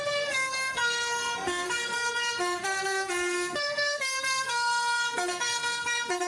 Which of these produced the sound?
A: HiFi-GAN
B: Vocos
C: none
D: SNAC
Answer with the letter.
D